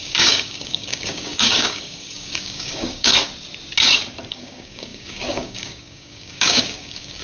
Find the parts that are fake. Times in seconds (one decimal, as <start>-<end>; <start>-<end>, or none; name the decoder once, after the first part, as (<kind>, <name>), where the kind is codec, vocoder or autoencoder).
0.0-3.1 (codec, DAC); 4.3-7.2